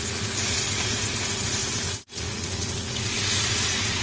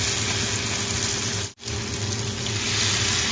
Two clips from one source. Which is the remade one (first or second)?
first